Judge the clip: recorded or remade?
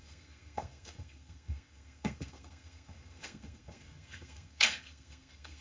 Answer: remade